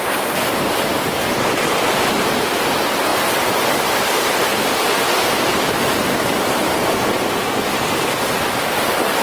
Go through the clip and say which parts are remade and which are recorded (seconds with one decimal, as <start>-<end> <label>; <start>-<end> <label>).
0.0-9.2 recorded